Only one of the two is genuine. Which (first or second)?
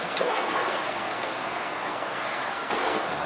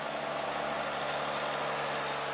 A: second